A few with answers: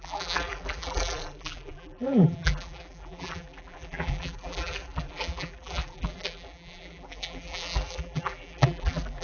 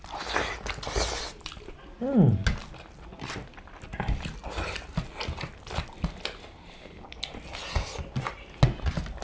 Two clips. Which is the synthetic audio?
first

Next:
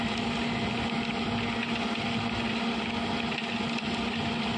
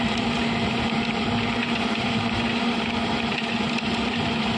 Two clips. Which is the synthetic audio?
second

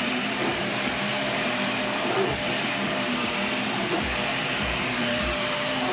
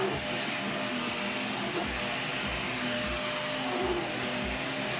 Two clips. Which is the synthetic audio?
first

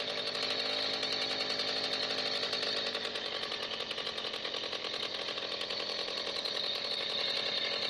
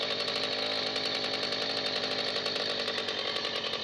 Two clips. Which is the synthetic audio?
second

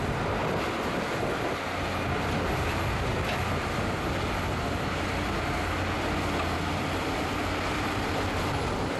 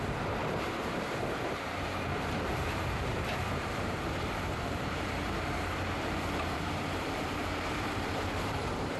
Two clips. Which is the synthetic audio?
second